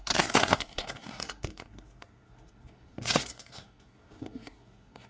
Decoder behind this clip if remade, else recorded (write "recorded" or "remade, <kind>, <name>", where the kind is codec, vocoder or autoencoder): remade, codec, SNAC